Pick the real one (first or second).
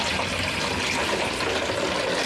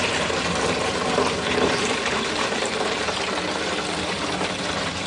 first